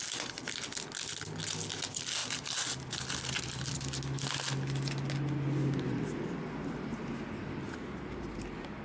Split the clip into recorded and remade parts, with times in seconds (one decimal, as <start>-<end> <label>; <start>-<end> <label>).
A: 0.0-2.2 recorded; 2.2-3.8 remade; 3.8-8.8 recorded